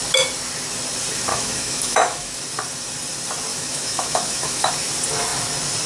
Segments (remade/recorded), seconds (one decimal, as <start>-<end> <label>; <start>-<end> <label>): 0.0-1.3 recorded; 1.3-2.4 remade; 2.4-3.5 recorded; 3.5-4.7 remade; 4.7-5.9 recorded